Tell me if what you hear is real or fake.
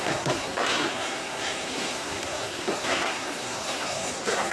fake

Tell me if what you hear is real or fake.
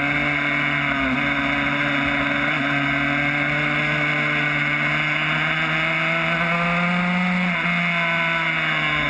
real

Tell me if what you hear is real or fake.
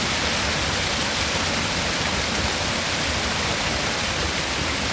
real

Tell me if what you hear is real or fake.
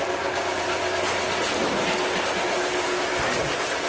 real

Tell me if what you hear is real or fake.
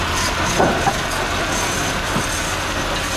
real